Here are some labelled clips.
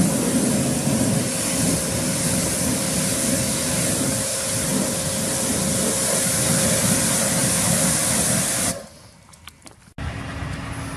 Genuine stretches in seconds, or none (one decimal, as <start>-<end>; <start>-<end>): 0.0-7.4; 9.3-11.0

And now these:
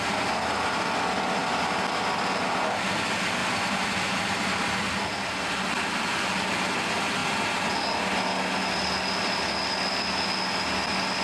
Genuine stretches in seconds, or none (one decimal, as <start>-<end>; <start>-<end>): 0.0-3.4; 4.8-11.2

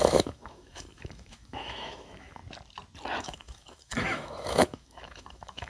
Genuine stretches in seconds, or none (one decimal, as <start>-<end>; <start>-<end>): 2.4-3.2

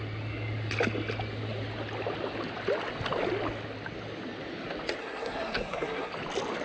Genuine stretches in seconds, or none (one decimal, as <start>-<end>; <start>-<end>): 0.0-5.0; 6.1-6.6